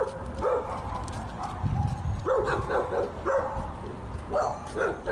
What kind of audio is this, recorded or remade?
recorded